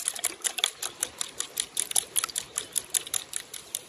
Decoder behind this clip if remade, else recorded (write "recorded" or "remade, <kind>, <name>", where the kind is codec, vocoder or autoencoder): recorded